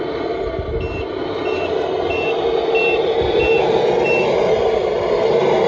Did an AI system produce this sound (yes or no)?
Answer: no